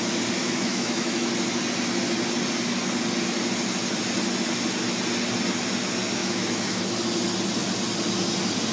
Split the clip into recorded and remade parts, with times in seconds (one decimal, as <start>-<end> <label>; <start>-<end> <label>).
0.0-0.4 recorded; 0.4-1.3 remade; 1.3-6.2 recorded; 6.2-6.8 remade; 6.8-8.7 recorded